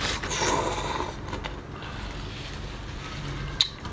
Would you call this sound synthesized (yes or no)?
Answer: no